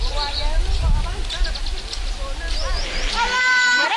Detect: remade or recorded recorded